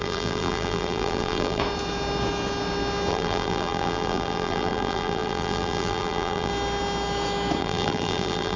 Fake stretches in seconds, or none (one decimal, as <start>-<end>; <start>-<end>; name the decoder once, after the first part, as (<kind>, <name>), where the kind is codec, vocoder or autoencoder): 0.0-1.6 (vocoder, BigVGAN v2); 3.1-6.5; 7.6-8.6